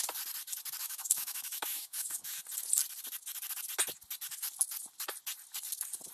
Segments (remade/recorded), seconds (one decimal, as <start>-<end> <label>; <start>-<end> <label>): 0.0-0.8 recorded; 0.8-2.4 remade; 2.4-6.1 recorded